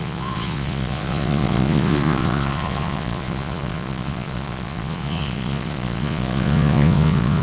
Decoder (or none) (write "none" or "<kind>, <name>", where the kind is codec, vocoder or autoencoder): vocoder, Vocos